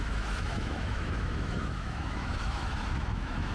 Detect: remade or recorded remade